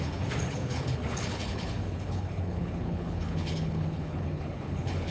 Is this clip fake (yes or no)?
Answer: yes